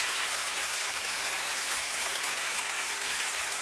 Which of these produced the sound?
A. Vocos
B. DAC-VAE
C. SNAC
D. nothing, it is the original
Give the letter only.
C